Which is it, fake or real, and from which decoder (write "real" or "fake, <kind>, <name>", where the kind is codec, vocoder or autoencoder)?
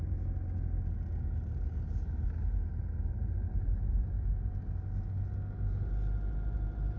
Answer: real